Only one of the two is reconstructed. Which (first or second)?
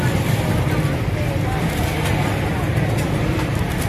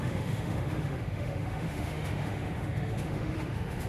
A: second